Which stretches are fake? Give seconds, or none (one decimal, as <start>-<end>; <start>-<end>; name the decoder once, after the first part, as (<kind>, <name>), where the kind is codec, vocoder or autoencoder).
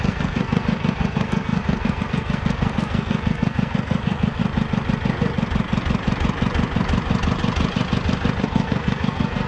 0.0-4.4 (codec, SNAC); 8.4-9.5